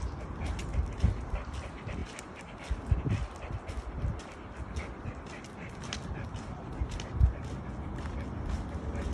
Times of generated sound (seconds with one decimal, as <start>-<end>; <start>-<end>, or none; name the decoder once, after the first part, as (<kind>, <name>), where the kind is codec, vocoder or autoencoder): none